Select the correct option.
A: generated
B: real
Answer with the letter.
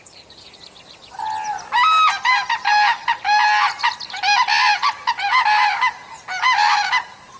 B